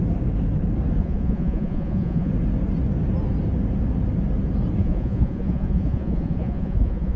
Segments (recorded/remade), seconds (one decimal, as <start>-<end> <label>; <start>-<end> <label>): 0.0-1.0 recorded; 1.0-2.3 remade; 2.3-4.8 recorded; 4.8-7.2 remade